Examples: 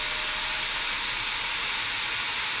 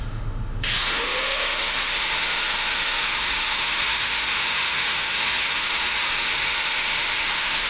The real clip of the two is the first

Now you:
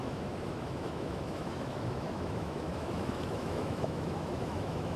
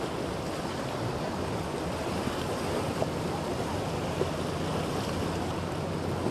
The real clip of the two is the second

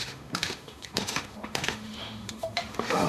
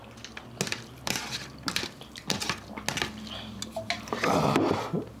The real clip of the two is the second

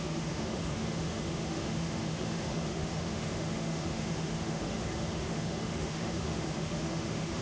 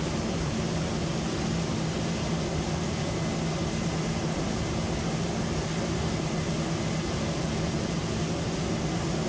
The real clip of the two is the second